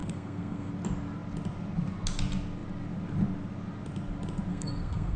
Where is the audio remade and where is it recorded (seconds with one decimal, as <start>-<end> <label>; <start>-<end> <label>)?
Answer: 0.0-0.7 remade; 0.7-4.5 recorded; 4.5-5.2 remade